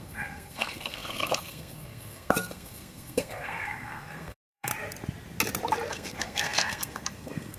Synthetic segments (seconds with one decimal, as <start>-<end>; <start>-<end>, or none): 0.0-4.7; 5.9-7.6

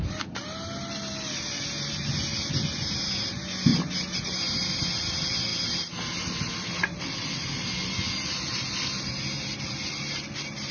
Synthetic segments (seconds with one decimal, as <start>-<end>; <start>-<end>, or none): none

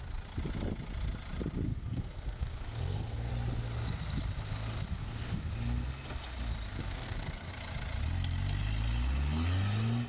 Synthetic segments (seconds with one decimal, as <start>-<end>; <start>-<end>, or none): 1.7-3.3; 5.0-5.5; 6.8-7.5